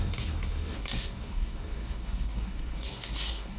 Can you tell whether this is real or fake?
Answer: fake